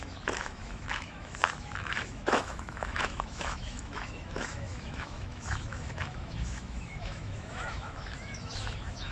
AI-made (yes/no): yes